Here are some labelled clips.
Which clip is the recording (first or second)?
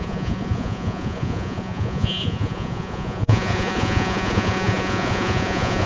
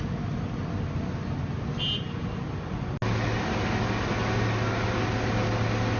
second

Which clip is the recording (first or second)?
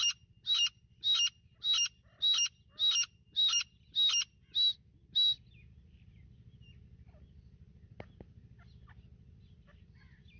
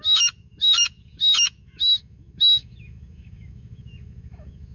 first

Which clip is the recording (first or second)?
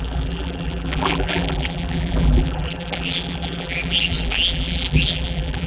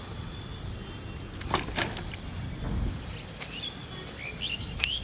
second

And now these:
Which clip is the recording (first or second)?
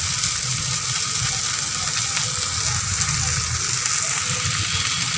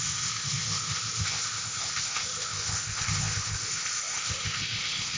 first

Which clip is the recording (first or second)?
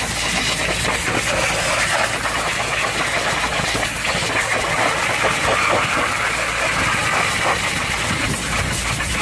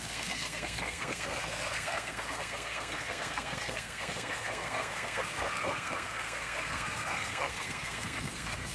first